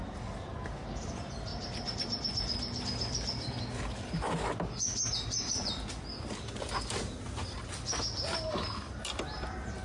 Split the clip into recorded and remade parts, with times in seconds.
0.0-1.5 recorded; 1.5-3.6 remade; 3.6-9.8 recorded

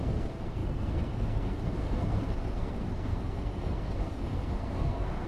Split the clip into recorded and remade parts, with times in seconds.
0.0-5.3 remade

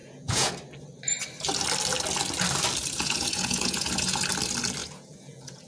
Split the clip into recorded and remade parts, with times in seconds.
0.0-0.5 remade; 0.5-2.8 recorded; 2.8-4.2 remade; 4.2-4.8 recorded; 4.8-5.7 remade